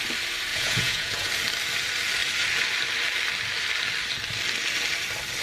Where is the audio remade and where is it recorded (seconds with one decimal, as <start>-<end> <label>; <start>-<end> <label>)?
0.0-0.5 recorded; 0.5-1.3 remade; 1.3-5.4 recorded